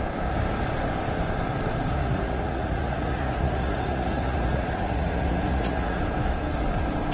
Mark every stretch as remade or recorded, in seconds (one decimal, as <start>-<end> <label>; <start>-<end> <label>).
0.0-2.0 recorded; 2.0-6.0 remade; 6.0-7.1 recorded